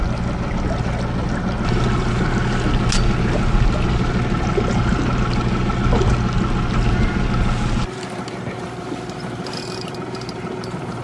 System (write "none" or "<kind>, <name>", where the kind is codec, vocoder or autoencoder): none